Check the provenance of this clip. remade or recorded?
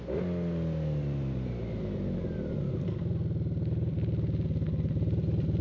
recorded